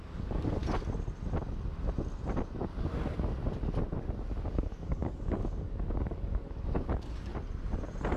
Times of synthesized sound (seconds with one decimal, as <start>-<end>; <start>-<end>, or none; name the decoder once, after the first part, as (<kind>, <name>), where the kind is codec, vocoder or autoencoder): 0.0-0.6 (codec, DAC); 4.5-7.3